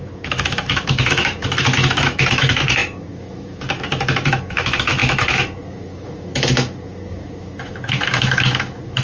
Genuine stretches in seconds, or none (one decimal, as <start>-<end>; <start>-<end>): none